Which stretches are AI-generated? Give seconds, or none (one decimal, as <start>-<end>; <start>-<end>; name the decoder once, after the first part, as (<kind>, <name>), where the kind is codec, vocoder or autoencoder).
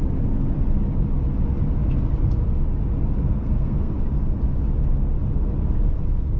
3.2-3.9 (codec, SNAC)